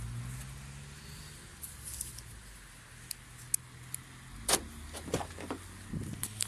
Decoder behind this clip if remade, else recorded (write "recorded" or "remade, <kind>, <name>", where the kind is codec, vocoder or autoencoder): recorded